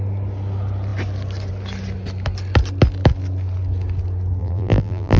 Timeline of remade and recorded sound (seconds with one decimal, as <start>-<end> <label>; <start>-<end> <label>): 0.0-4.4 recorded; 4.4-5.2 remade